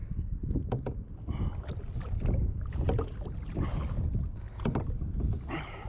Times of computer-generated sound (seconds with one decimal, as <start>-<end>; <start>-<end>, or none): 0.0-0.7